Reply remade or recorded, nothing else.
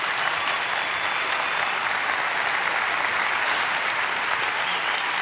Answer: recorded